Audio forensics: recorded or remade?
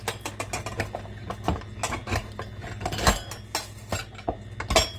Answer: recorded